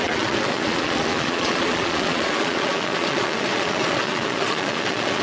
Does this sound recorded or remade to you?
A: remade